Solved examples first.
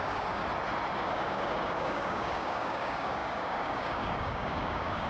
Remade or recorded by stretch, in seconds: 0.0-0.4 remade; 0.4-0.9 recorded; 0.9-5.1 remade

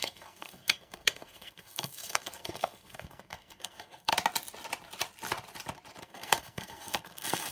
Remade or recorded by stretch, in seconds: 0.0-4.1 remade; 4.1-6.0 recorded; 6.0-7.5 remade

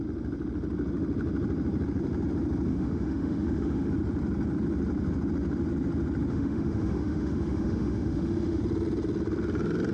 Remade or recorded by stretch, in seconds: 0.0-2.7 recorded; 2.7-3.9 remade; 3.9-6.3 recorded; 6.3-8.6 remade; 8.6-9.9 recorded

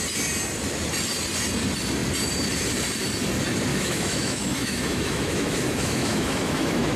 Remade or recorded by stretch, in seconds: 0.0-3.7 recorded; 3.7-7.0 remade

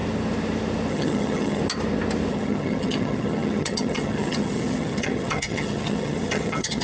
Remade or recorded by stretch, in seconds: 0.0-0.9 recorded; 0.9-1.6 remade; 1.6-2.3 recorded; 2.3-6.8 remade

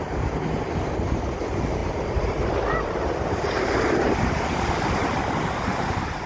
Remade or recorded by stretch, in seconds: 0.0-6.3 recorded

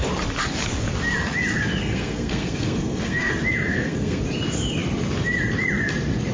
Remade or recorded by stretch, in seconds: 0.0-1.8 recorded; 1.8-3.3 remade; 3.3-3.7 recorded; 3.7-4.2 remade; 4.2-6.3 recorded